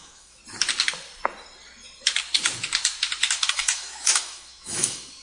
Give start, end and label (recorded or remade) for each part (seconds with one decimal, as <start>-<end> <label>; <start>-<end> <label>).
0.0-0.4 remade; 0.4-3.5 recorded; 3.5-5.2 remade